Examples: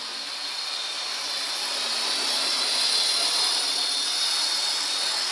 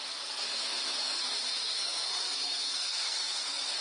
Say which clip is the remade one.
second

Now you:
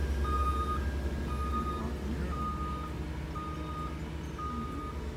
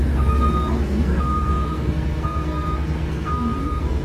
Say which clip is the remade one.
second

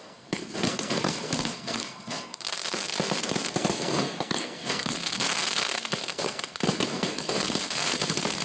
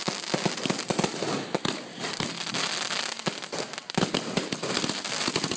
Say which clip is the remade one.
first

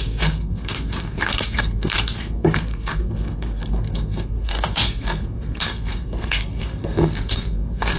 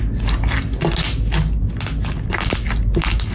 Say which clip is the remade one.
first